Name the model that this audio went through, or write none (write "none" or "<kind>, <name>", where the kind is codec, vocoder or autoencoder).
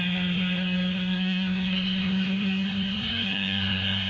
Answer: codec, SNAC